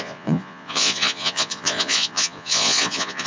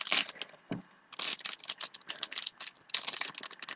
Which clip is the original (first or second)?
second